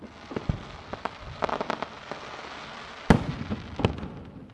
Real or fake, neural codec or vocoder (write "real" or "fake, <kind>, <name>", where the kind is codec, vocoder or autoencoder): real